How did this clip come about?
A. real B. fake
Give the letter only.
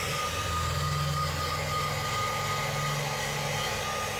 A